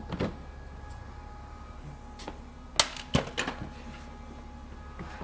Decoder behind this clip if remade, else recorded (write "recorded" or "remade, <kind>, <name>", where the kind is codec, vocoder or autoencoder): recorded